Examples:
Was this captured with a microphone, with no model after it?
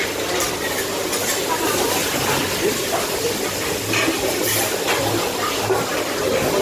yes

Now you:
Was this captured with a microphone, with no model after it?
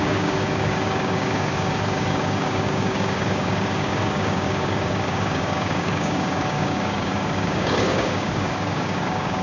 no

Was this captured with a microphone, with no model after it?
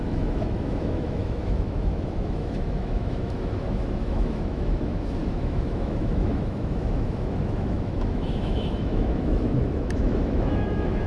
no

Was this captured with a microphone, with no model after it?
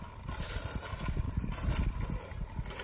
yes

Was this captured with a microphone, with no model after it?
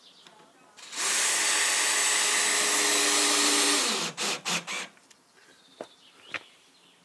yes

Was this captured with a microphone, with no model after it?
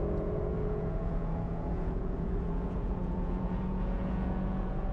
no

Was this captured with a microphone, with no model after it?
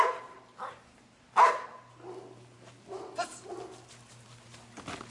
yes